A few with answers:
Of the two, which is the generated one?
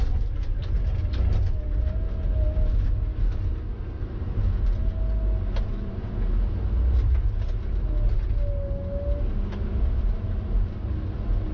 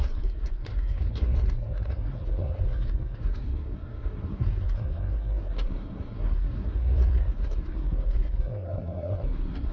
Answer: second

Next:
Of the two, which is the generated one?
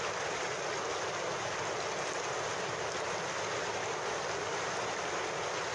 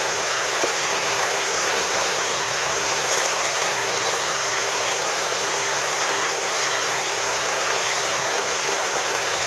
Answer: second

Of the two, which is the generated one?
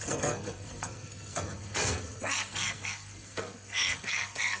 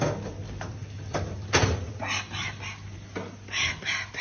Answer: first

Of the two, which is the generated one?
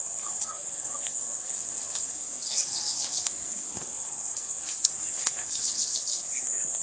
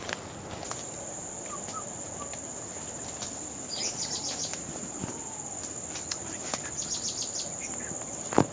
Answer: first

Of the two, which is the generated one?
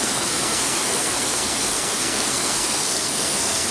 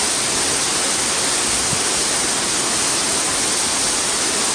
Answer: first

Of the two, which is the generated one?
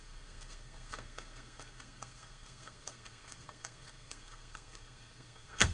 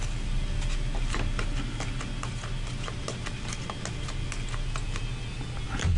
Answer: first